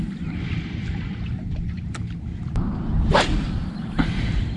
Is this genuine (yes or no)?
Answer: no